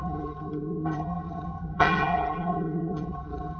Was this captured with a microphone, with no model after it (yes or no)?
no